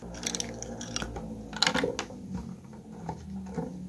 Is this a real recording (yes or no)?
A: yes